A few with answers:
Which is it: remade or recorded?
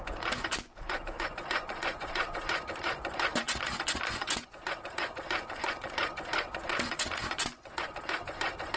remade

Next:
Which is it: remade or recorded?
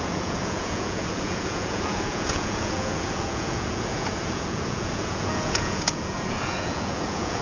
remade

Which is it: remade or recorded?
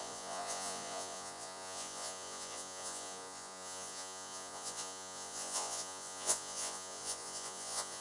remade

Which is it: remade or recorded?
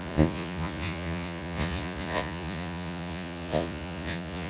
remade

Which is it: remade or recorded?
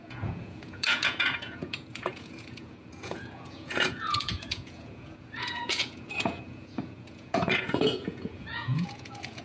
remade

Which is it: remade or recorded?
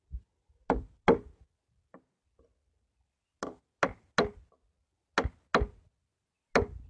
recorded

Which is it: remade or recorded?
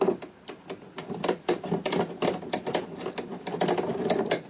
recorded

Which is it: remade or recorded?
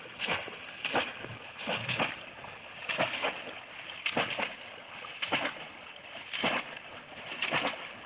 recorded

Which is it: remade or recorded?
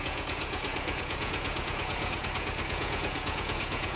remade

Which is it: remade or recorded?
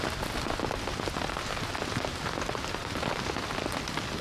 recorded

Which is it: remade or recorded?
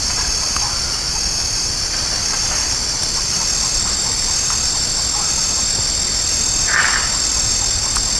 recorded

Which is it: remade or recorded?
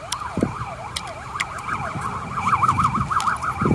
recorded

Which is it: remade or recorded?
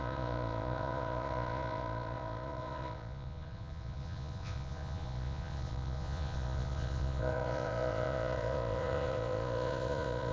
remade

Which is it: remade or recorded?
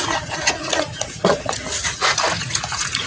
remade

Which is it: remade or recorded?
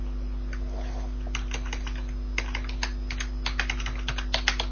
recorded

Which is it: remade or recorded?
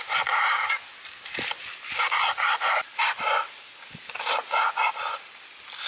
recorded